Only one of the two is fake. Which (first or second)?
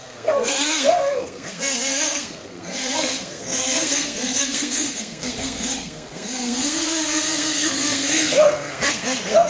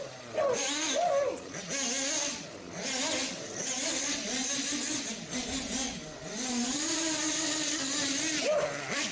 first